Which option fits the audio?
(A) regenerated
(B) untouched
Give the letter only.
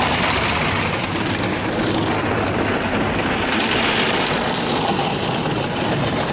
B